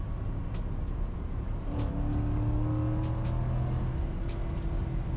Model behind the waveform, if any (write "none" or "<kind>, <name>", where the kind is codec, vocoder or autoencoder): none